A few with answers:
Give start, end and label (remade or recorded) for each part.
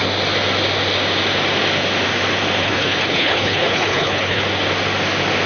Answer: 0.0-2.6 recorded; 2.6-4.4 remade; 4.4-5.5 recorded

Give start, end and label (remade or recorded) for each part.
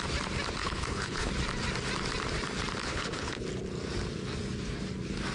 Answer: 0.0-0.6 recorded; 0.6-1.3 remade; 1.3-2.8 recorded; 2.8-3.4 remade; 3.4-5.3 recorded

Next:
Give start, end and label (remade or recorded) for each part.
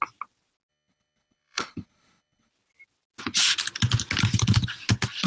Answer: 0.0-0.7 recorded; 0.7-2.5 remade; 2.5-5.3 recorded